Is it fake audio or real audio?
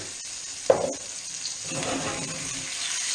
real